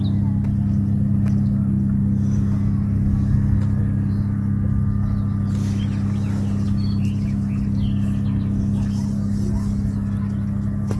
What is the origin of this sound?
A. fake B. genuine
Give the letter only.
B